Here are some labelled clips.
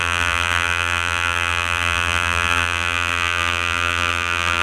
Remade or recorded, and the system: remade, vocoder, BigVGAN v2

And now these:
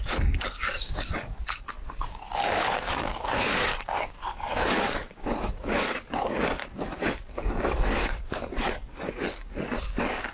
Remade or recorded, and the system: remade, codec, DAC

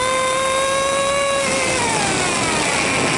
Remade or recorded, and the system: recorded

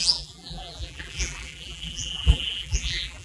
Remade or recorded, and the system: remade, vocoder, BigVGAN v2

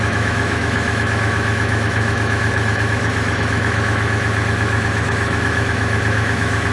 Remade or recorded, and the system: remade, autoencoder, DAC-VAE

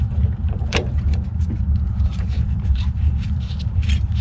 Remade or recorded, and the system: remade, vocoder, BigVGAN v2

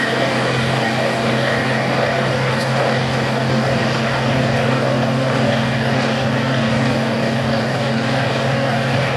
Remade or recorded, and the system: remade, codec, DAC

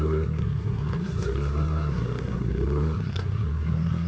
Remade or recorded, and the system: remade, codec, SNAC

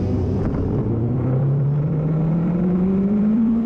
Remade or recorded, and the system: remade, vocoder, BigVGAN v2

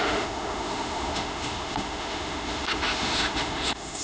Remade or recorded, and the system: remade, autoencoder, DAC-VAE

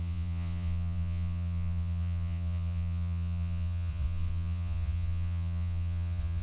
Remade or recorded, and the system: remade, vocoder, Vocos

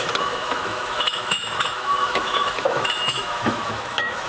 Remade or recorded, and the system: remade, autoencoder, DAC-VAE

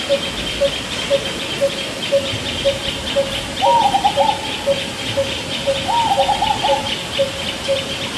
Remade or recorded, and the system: recorded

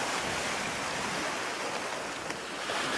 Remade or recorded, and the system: recorded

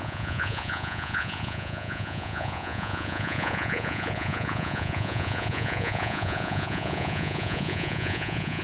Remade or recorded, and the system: remade, vocoder, Vocos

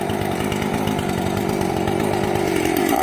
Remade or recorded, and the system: recorded